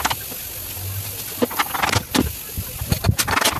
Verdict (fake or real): real